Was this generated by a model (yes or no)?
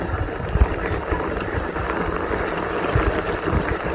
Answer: yes